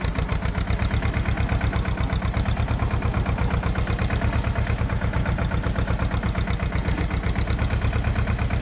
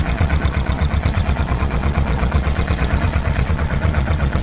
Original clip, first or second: first